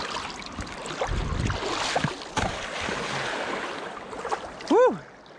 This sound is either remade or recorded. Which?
recorded